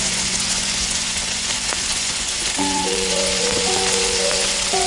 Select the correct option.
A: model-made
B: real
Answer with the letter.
A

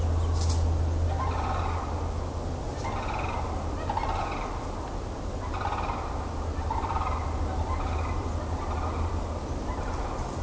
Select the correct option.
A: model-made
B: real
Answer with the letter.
B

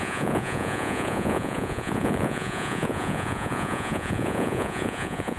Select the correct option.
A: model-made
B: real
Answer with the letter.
A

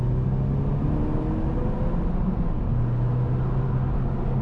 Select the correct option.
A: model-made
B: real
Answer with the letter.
B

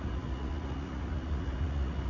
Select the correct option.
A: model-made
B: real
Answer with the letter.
A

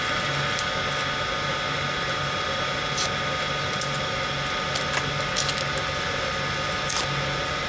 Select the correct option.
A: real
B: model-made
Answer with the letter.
A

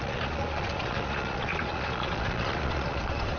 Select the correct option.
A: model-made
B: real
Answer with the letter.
A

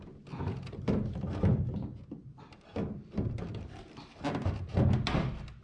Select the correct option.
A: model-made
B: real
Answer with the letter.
B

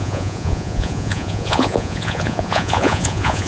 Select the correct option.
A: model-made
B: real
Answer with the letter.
A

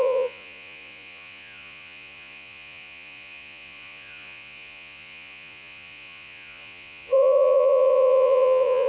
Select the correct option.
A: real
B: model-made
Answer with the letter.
B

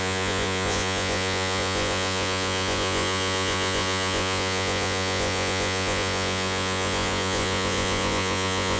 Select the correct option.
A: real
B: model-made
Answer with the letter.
B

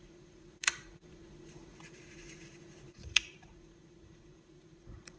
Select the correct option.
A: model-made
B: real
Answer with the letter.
A